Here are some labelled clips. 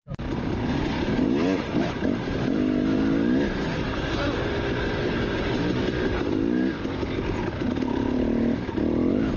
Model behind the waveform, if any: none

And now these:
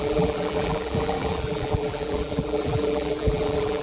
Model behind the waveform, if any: vocoder, BigVGAN v2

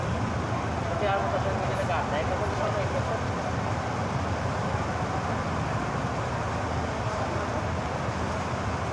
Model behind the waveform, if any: none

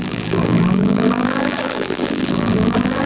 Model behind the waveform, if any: vocoder, BigVGAN v2